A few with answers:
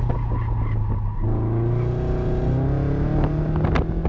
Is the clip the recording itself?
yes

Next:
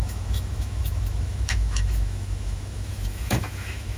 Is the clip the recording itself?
no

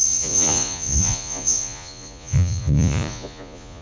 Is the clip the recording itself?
no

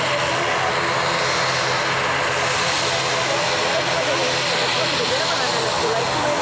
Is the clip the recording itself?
yes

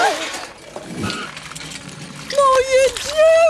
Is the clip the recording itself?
yes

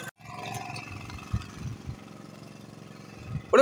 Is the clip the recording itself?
yes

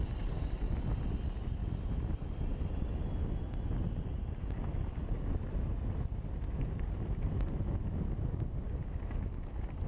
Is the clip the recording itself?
yes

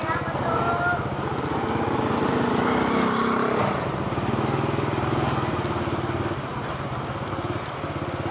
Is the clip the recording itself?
yes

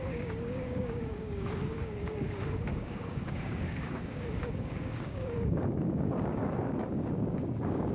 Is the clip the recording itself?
no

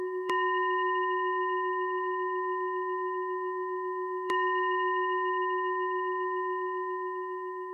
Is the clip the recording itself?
no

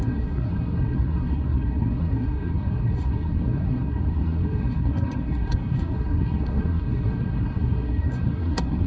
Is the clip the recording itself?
no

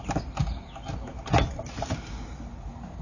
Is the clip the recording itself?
yes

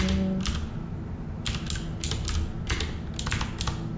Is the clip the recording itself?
yes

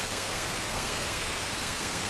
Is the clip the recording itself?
no